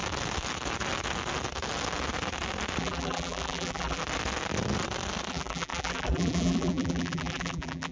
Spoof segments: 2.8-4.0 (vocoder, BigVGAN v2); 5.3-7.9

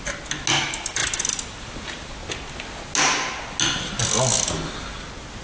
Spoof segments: none

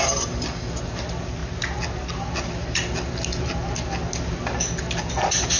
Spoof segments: none

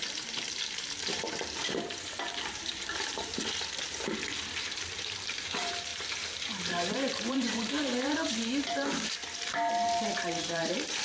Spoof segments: 0.0-3.3 (vocoder, BigVGAN v2); 4.6-11.0

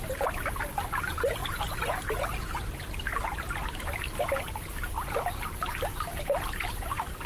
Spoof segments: 3.1-7.3 (vocoder, BigVGAN v2)

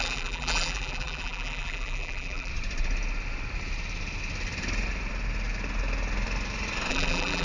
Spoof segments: 0.0-2.5 (vocoder, BigVGAN v2); 6.9-7.4

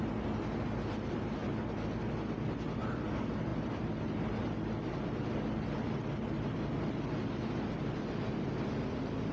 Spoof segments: none

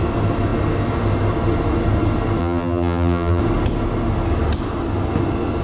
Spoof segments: 2.4-3.4 (vocoder, BigVGAN v2)